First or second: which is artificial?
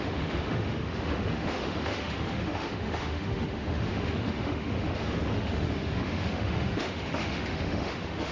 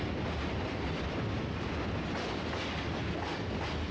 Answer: first